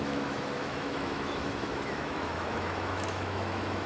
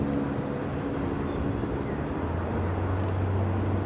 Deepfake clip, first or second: first